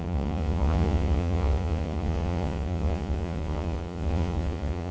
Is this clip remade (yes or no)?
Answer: yes